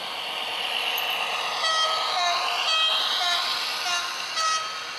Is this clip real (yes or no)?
yes